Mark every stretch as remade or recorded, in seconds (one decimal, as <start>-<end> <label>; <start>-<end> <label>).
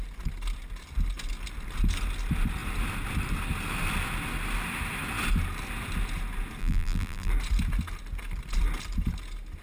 0.0-6.6 recorded; 6.6-7.3 remade; 7.3-9.6 recorded